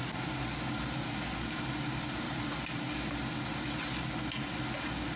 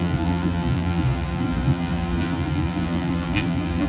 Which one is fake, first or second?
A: second